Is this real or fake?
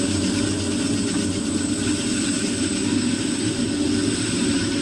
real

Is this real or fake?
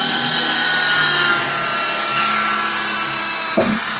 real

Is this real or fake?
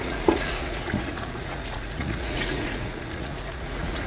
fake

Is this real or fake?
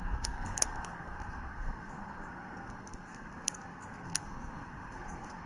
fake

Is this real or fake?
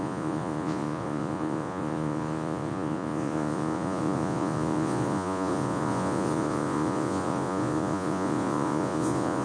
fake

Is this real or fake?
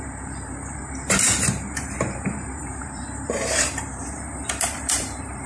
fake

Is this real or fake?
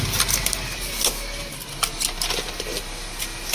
real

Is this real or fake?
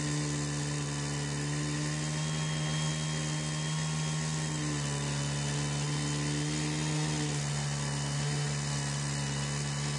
real